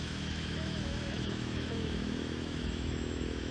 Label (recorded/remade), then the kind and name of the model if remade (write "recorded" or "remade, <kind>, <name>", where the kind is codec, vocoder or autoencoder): remade, autoencoder, DAC-VAE